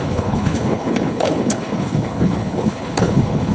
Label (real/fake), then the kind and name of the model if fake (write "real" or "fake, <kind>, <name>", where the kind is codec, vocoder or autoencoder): fake, codec, HILCodec